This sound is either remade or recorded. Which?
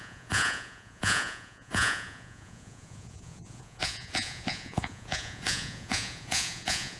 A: remade